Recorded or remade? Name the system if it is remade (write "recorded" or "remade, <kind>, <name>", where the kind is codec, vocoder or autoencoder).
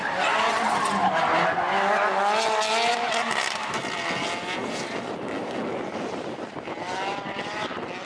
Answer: recorded